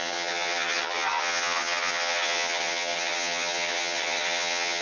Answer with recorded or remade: remade